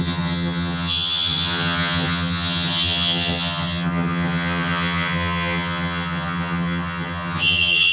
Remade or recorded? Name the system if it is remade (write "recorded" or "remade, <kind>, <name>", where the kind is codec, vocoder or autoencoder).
remade, vocoder, HiFi-GAN